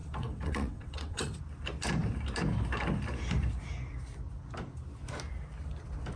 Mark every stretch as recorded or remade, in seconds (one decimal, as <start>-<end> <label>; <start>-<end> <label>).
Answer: 0.0-1.4 remade; 1.4-6.2 recorded